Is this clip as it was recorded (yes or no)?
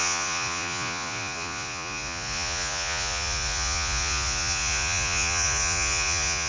no